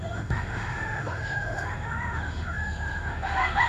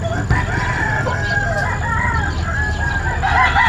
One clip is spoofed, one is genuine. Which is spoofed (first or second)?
first